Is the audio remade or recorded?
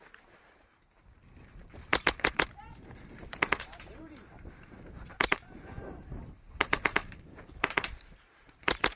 remade